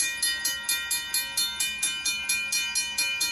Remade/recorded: recorded